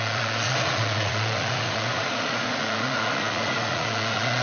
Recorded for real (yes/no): no